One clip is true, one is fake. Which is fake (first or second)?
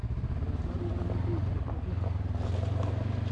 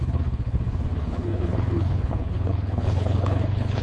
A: second